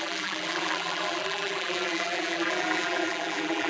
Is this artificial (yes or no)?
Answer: yes